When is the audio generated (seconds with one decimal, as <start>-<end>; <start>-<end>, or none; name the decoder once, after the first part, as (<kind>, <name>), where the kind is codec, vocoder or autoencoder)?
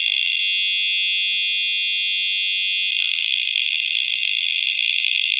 0.0-0.4 (vocoder, BigVGAN v2); 2.9-5.4